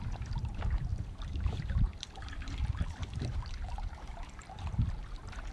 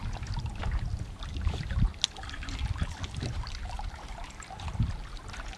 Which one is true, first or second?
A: second